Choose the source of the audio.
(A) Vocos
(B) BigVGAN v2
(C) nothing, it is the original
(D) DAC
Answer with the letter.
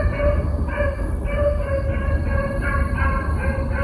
C